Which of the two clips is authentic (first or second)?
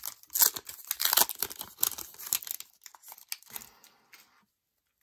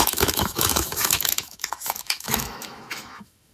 first